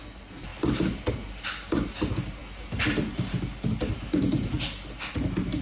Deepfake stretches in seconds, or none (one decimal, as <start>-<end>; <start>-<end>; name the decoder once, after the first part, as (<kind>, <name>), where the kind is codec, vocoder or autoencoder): none